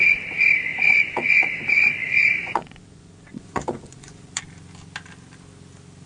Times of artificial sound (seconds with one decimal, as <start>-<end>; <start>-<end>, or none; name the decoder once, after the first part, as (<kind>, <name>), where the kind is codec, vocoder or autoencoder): 0.7-4.4 (vocoder, Vocos)